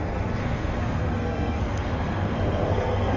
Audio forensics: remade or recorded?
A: remade